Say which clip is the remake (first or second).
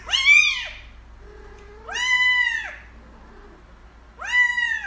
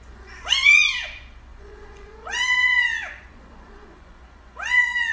second